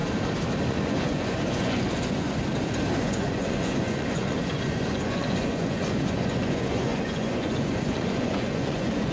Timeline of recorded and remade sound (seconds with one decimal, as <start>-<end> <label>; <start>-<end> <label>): 0.0-0.7 recorded; 0.7-2.4 remade; 2.4-3.0 recorded; 3.0-9.1 remade